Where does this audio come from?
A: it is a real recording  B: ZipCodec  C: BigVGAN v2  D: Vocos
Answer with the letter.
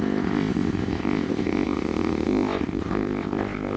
B